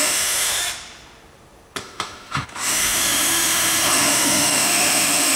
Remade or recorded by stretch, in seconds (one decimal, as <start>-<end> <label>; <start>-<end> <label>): 0.0-0.6 remade; 0.6-1.8 recorded; 1.8-5.4 remade